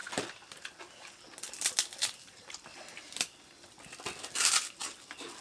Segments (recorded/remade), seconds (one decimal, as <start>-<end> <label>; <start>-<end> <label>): 0.0-2.0 recorded; 2.0-2.6 remade; 2.6-5.4 recorded